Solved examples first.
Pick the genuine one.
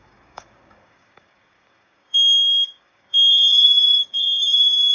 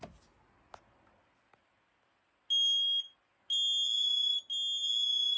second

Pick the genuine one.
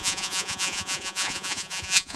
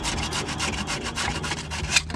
second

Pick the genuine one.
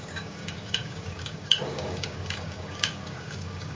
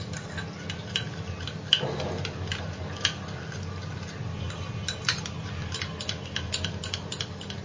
second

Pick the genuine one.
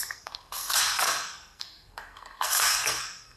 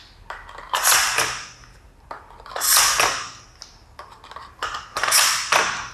second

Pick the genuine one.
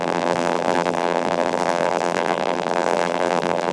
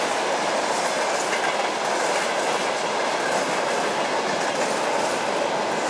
second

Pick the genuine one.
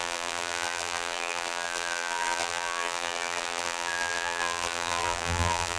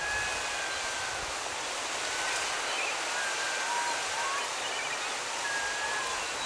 second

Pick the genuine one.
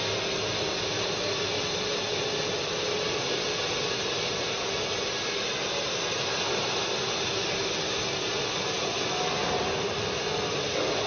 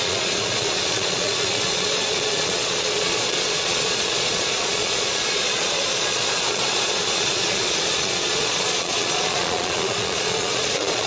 first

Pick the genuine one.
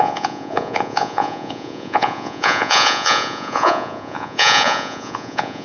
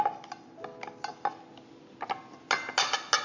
second